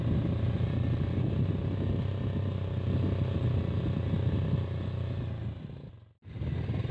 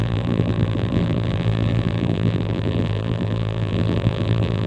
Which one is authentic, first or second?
first